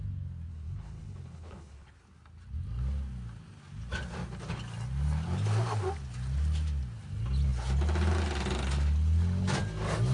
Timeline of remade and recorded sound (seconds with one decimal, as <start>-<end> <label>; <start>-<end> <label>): 0.0-0.5 recorded; 0.5-1.9 remade; 1.9-10.1 recorded

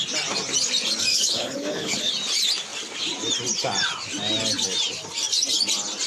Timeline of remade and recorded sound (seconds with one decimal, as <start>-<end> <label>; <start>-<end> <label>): 0.0-1.1 recorded; 1.1-2.1 remade; 2.1-6.1 recorded